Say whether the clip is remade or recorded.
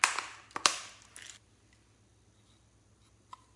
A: recorded